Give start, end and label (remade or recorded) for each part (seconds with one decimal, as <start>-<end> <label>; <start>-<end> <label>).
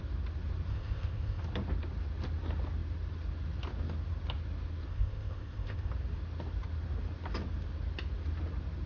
0.0-0.7 recorded; 0.7-1.4 remade; 1.4-4.9 recorded; 4.9-5.9 remade; 5.9-8.9 recorded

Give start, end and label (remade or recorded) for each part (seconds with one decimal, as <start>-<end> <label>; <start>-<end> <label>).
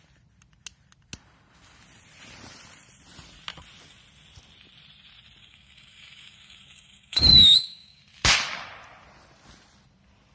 0.0-5.4 recorded; 5.4-8.0 remade; 8.0-10.3 recorded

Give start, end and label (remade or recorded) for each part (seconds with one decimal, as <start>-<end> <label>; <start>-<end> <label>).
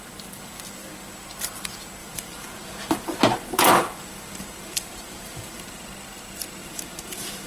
0.0-2.0 recorded; 2.0-5.8 remade; 5.8-6.6 recorded; 6.6-7.5 remade